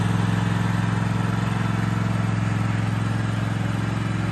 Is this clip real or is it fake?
real